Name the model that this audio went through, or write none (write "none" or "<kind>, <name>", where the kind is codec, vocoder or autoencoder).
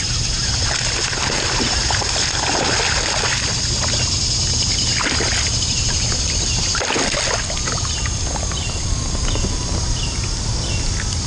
none